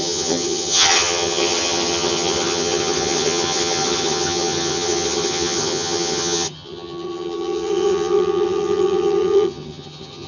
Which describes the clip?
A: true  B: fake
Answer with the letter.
B